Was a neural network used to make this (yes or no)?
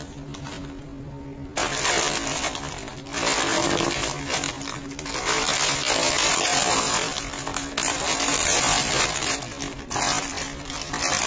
no